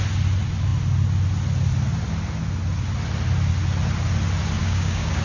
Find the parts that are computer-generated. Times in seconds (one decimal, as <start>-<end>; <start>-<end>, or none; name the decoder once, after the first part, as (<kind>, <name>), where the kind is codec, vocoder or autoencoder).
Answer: 4.6-5.2 (codec, DAC)